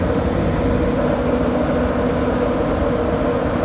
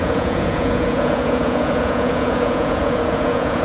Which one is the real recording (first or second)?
first